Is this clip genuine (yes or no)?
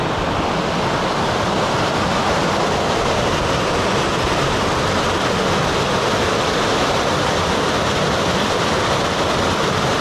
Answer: yes